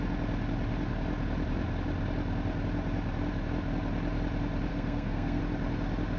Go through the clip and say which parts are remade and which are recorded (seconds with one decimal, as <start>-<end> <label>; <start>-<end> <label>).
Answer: 0.0-4.7 recorded; 4.7-5.4 remade; 5.4-6.2 recorded